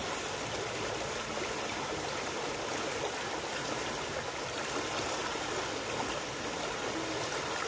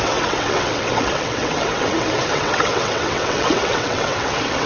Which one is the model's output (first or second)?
second